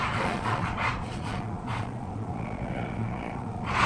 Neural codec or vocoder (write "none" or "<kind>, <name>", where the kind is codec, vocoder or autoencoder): vocoder, Vocos